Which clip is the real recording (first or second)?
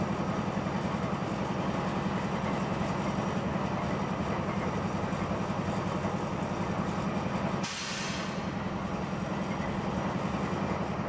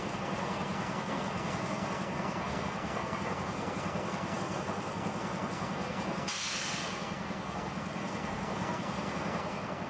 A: first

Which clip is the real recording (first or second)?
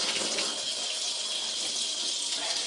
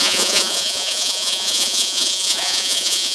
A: first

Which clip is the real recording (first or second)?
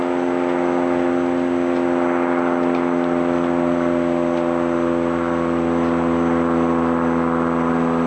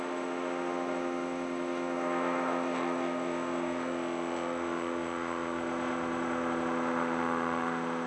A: first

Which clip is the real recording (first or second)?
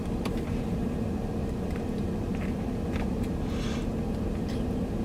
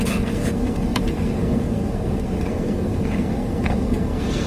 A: first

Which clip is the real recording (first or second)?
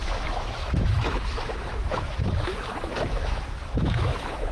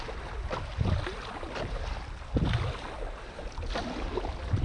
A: second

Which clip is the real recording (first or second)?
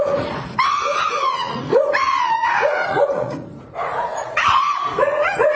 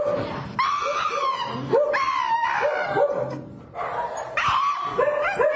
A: second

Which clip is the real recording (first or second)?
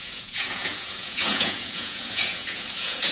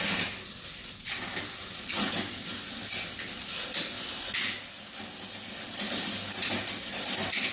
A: second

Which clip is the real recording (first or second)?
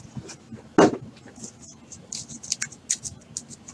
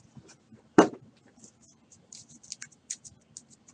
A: first